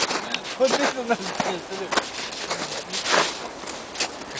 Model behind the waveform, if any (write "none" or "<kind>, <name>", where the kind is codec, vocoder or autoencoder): none